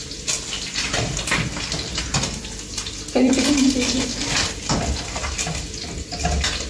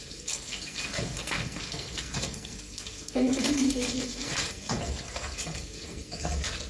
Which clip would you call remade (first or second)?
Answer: second